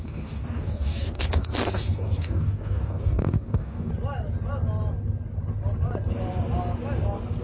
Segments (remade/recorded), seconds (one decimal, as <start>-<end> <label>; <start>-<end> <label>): 0.0-3.9 remade; 3.9-7.4 recorded